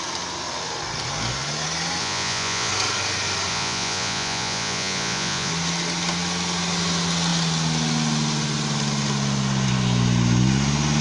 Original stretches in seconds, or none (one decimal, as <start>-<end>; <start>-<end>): 0.0-2.0; 2.7-3.5; 5.5-11.0